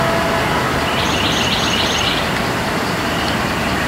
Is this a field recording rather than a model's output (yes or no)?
yes